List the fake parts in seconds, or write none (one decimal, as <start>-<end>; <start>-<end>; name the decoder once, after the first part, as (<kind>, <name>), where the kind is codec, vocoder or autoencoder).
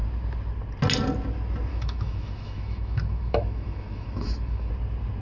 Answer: 1.7-4.7 (autoencoder, DAC-VAE)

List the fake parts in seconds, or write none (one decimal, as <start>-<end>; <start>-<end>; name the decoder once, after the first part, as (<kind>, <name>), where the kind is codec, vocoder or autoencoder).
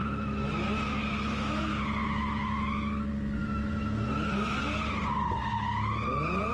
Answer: 0.0-1.6 (autoencoder, DAC-VAE); 2.0-2.9; 3.4-4.6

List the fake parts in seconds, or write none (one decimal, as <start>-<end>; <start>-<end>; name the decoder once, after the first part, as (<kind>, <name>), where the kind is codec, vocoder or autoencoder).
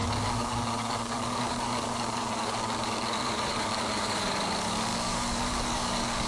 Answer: 0.0-6.3 (codec, DAC)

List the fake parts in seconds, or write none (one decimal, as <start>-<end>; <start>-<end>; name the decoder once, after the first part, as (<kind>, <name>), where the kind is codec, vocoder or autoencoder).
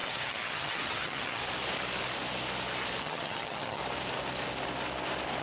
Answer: 0.0-1.4 (vocoder, HiFi-GAN); 3.0-3.8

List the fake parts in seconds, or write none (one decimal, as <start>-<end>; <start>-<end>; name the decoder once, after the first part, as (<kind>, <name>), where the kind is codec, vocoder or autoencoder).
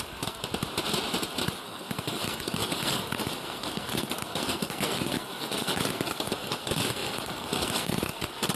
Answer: 0.0-0.4 (codec, SNAC); 1.6-8.6